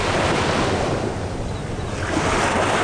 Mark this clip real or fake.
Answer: real